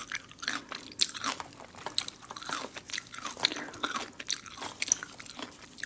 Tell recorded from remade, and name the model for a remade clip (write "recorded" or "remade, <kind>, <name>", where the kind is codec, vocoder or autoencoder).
recorded